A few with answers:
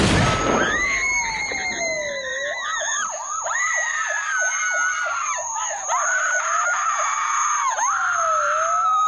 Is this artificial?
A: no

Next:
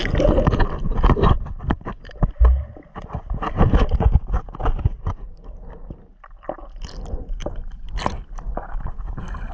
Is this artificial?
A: no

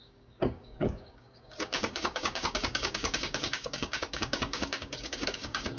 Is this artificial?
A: yes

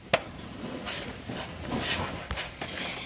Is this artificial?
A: no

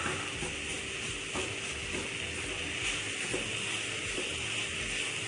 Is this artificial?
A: no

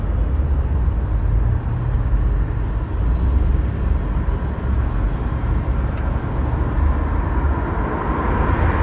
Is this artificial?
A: no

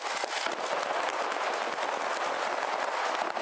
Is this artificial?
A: no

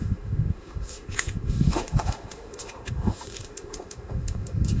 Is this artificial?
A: yes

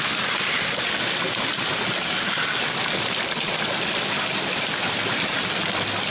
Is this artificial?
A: no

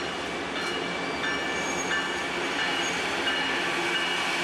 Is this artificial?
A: no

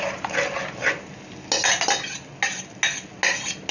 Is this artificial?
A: no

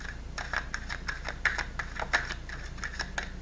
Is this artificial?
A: no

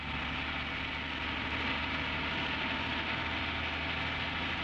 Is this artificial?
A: no